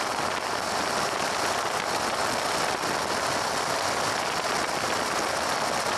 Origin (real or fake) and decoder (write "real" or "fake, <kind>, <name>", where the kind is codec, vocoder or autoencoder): real